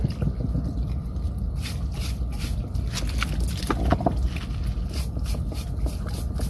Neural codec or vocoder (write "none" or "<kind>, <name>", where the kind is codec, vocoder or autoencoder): none